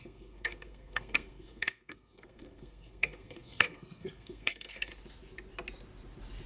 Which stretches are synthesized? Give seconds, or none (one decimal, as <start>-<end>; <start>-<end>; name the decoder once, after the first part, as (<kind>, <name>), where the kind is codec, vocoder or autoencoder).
0.0-4.9 (codec, SNAC)

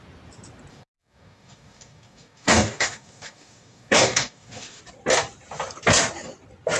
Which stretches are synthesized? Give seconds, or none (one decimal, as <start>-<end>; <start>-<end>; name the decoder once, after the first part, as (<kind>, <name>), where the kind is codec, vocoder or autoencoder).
0.7-4.8 (codec, DAC)

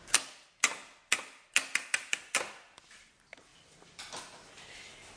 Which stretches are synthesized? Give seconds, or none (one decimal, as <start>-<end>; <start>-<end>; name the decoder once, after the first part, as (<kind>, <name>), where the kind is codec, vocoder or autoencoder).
none